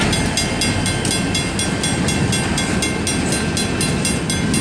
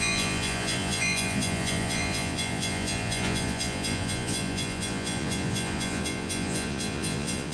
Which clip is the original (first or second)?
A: first